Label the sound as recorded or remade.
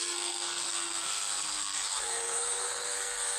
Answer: remade